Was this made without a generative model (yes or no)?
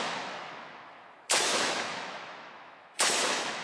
no